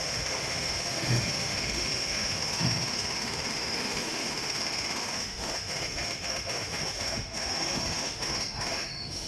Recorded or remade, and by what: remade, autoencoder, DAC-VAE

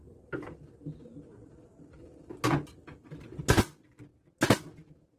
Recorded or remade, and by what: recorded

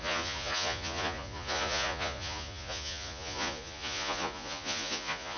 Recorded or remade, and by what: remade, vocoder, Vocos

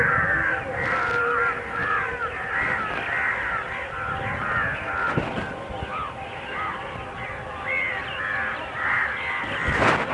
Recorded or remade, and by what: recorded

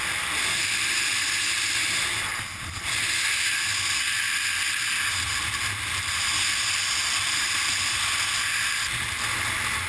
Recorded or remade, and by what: recorded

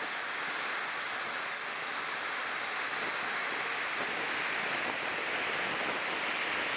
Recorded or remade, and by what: recorded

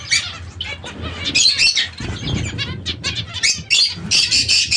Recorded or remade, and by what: recorded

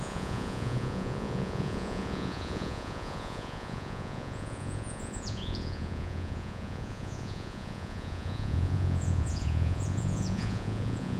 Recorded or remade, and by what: remade, vocoder, Vocos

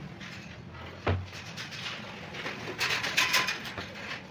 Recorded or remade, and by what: recorded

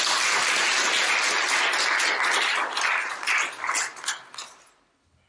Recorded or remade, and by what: recorded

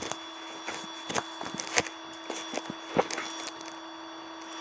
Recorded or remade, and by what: recorded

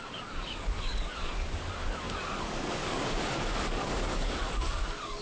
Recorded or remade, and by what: remade, codec, DAC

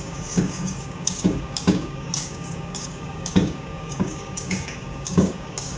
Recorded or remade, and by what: remade, codec, DAC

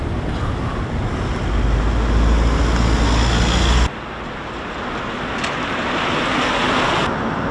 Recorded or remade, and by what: recorded